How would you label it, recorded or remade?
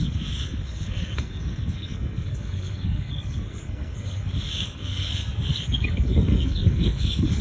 remade